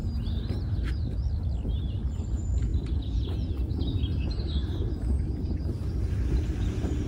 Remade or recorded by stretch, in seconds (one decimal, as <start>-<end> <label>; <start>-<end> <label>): 0.0-2.7 recorded; 2.7-3.5 remade; 3.5-7.1 recorded